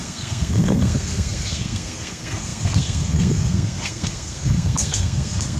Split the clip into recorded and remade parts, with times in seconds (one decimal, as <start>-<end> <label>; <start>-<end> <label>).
0.0-5.6 remade